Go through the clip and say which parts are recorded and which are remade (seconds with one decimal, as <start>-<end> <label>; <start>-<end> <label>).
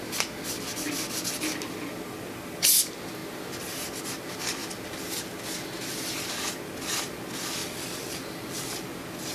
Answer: 0.0-7.6 recorded; 7.6-8.9 remade; 8.9-9.3 recorded